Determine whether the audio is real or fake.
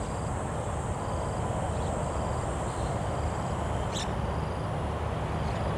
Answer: real